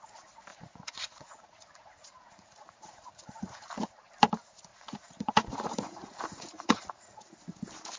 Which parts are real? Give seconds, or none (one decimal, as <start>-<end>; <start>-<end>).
0.0-0.5; 3.7-4.7; 7.2-8.0